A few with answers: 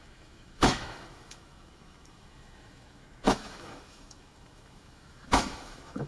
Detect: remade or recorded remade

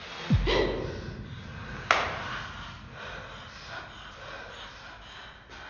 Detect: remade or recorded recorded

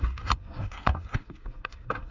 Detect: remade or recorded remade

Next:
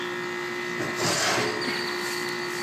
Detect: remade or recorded recorded